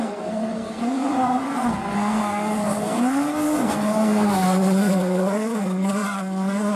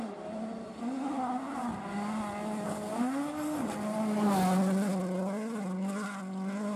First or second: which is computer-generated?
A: first